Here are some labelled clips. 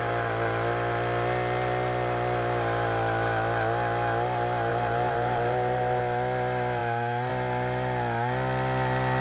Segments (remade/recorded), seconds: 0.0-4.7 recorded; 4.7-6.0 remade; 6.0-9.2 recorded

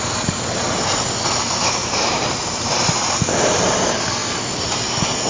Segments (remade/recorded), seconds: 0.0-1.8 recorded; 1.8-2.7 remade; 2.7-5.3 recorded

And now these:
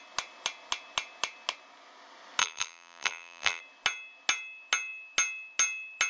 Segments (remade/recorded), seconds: 0.0-2.4 recorded; 2.4-3.6 remade; 3.6-6.1 recorded